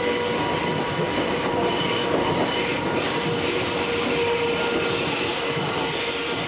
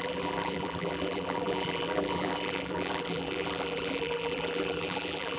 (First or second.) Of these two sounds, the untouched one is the first